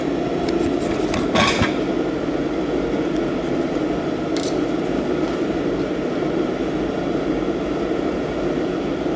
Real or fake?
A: real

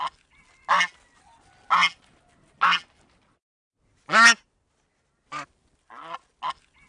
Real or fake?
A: real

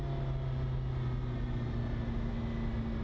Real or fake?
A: real